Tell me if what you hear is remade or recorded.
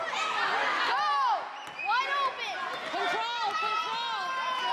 recorded